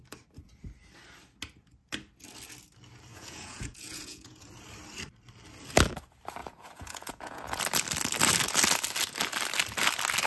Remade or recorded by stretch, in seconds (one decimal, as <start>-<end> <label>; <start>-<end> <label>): 0.0-3.1 recorded; 3.1-4.4 remade; 4.4-6.4 recorded; 6.4-7.6 remade; 7.6-10.3 recorded